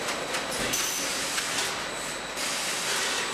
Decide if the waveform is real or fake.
real